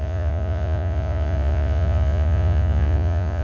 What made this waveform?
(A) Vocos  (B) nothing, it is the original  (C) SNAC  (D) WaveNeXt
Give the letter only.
A